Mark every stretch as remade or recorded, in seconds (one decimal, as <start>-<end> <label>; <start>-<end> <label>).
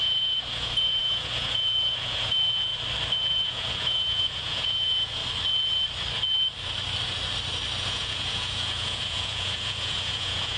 0.0-2.7 remade; 2.7-3.3 recorded; 3.3-5.2 remade; 5.2-7.8 recorded; 7.8-10.6 remade